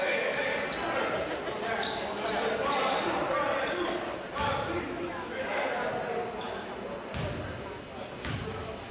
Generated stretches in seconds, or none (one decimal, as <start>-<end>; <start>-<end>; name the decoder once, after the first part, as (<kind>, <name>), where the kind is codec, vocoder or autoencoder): 0.0-0.5 (autoencoder, DAC-VAE); 4.8-5.9